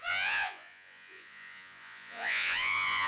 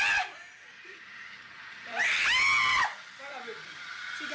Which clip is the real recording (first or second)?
second